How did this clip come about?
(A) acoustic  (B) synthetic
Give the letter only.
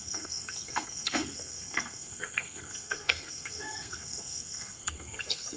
B